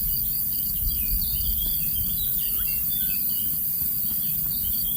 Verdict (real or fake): real